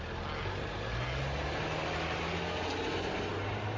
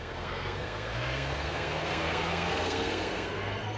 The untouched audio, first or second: first